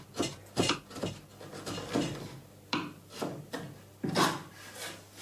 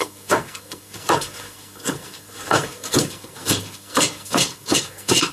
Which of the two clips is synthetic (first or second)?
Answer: second